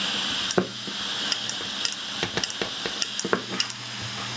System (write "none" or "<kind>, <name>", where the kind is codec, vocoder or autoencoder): none